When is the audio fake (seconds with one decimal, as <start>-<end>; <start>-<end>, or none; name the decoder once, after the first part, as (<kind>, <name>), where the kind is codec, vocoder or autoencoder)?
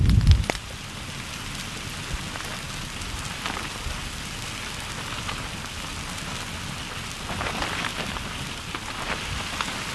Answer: none